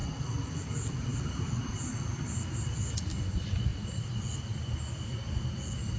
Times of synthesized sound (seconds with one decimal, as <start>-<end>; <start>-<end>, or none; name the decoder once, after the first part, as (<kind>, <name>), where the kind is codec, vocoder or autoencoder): 0.6-3.7 (vocoder, BigVGAN v2)